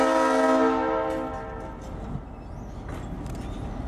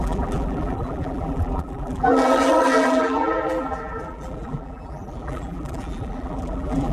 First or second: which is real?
first